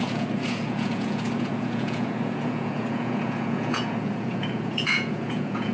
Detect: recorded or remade remade